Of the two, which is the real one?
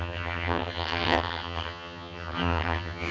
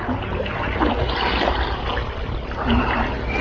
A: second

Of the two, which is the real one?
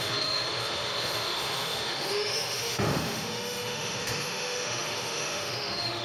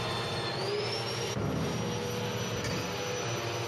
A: second